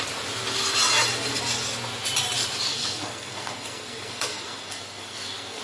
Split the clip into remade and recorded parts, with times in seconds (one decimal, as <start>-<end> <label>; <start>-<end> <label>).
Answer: 0.0-2.7 recorded; 2.7-5.6 remade